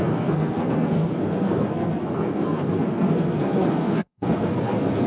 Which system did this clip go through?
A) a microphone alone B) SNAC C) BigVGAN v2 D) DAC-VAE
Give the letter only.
B